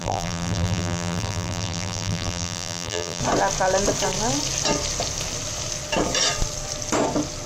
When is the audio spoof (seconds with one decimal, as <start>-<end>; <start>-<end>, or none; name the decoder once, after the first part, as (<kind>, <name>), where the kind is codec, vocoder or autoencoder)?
0.0-3.2 (vocoder, BigVGAN v2)